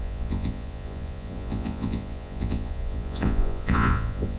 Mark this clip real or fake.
fake